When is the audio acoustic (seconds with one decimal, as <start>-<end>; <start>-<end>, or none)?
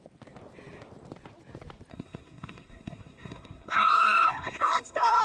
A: 0.0-1.9